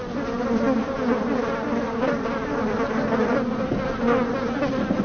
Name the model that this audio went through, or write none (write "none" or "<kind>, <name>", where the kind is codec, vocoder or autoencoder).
none